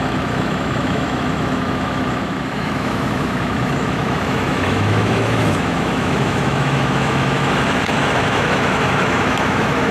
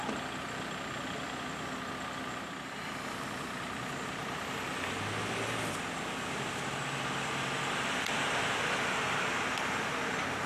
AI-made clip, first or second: first